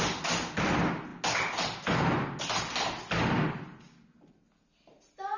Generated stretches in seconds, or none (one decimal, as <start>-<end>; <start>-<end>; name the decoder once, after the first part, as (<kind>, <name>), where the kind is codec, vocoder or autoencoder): none